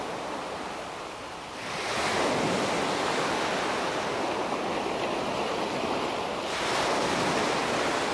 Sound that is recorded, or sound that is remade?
recorded